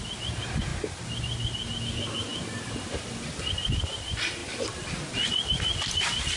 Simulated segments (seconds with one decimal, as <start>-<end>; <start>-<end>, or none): none